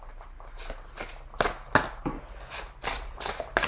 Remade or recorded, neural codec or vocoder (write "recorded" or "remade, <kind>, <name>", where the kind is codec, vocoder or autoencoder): recorded